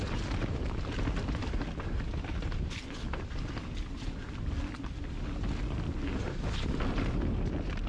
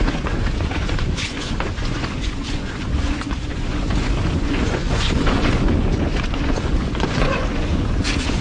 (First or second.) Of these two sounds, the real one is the first